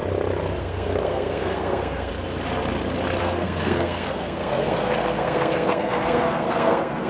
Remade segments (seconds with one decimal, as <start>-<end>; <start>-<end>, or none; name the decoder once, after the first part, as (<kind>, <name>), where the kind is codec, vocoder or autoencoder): 0.6-2.1 (codec, SNAC); 3.2-7.1